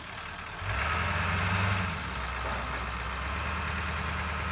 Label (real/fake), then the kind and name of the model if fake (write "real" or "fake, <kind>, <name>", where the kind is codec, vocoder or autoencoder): real